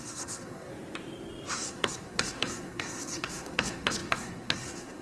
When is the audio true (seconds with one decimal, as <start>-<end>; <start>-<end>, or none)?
0.7-1.5